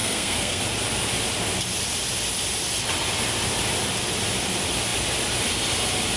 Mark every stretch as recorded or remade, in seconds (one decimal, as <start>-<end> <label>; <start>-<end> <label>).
0.0-0.6 remade; 0.6-6.2 recorded